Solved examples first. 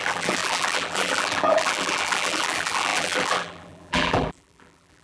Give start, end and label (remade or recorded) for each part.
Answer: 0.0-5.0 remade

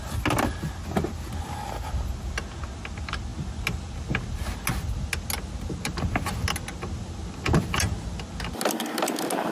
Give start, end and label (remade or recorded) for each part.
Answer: 0.0-9.5 recorded

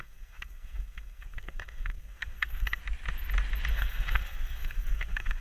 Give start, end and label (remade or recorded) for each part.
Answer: 0.0-2.8 remade; 2.8-3.7 recorded; 3.7-5.4 remade

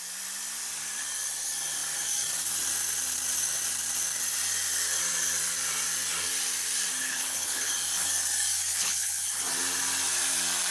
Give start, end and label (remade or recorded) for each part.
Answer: 0.0-7.0 recorded; 7.0-7.7 remade; 7.7-8.7 recorded; 8.7-9.4 remade; 9.4-10.7 recorded